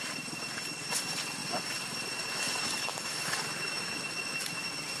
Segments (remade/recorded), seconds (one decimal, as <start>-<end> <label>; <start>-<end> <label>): 0.0-2.9 recorded; 2.9-4.0 remade; 4.0-5.0 recorded